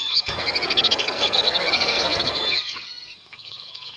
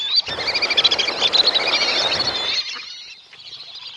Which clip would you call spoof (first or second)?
first